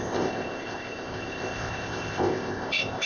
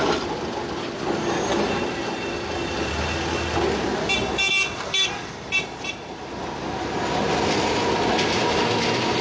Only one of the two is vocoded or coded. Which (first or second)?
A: first